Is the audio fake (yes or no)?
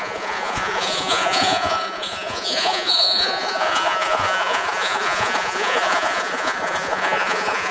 yes